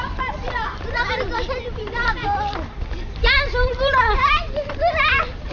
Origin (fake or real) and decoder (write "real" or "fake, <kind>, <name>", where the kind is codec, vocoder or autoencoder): fake, vocoder, BigVGAN v2